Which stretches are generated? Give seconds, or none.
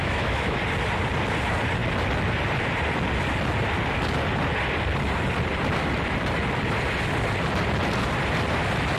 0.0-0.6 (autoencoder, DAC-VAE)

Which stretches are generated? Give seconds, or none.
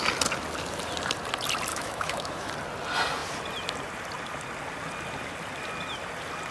1.7-2.5 (autoencoder, DAC-VAE)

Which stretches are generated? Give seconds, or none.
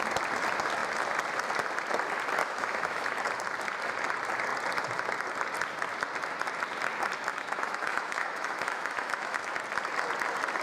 2.4-3.1 (autoencoder, DAC-VAE); 7.3-9.5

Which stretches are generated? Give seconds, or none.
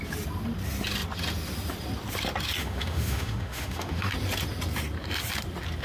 2.6-4.1 (autoencoder, DAC-VAE)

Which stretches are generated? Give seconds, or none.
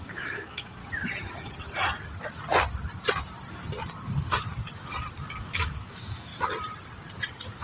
0.0-0.8 (autoencoder, DAC-VAE); 5.4-6.3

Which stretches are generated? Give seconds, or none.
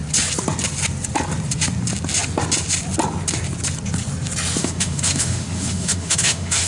4.6-6.7 (autoencoder, DAC-VAE)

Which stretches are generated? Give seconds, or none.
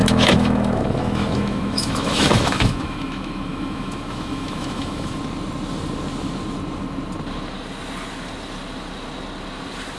0.0-5.2 (autoencoder, DAC-VAE)